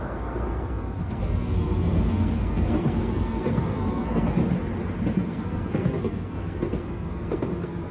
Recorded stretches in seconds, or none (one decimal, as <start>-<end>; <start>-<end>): 4.4-5.0